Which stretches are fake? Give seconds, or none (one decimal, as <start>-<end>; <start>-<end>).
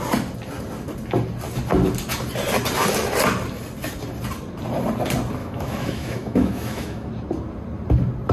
5.4-7.1